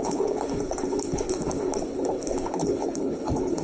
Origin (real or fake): fake